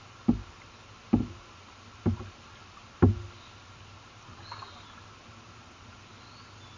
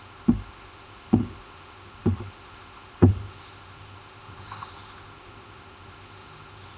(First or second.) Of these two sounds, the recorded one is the first